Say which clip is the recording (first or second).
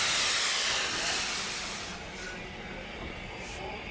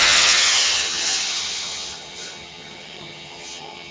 first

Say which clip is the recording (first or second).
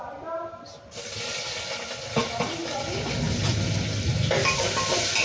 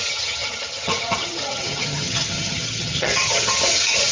first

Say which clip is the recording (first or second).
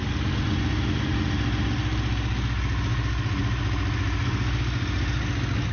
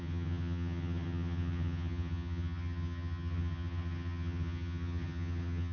first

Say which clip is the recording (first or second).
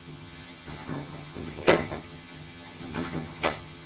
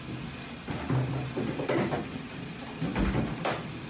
second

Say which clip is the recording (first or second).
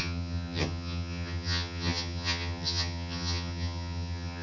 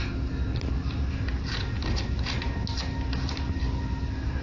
second